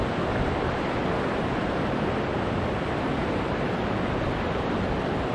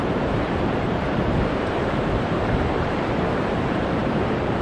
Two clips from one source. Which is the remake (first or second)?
second